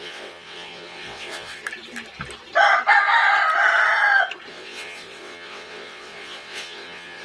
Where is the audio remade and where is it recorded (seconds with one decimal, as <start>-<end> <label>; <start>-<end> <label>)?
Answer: 0.0-1.6 remade; 1.6-4.5 recorded; 4.5-7.2 remade